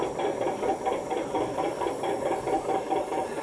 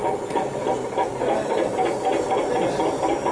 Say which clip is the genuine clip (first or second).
second